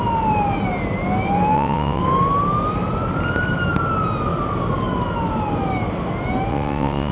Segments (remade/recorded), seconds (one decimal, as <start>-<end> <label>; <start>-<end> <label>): 0.0-1.5 recorded; 1.5-2.0 remade; 2.0-6.5 recorded; 6.5-7.1 remade